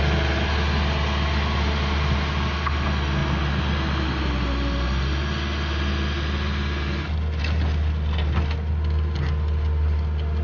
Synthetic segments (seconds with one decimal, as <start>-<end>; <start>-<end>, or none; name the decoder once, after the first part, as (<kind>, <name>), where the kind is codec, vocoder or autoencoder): none